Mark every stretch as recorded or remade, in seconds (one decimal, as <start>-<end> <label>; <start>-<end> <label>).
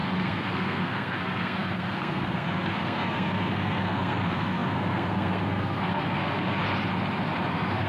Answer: 0.0-6.6 remade; 6.6-7.5 recorded; 7.5-7.9 remade